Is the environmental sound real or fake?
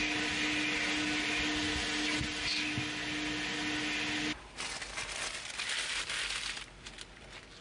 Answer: real